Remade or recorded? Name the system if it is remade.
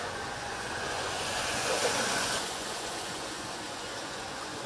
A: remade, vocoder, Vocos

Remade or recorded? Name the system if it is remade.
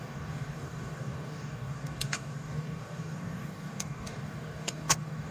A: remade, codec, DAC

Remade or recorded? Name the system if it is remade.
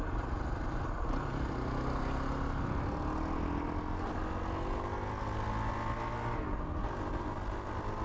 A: recorded